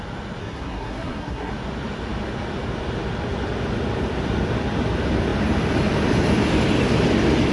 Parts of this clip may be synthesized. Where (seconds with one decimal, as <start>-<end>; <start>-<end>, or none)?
0.4-1.5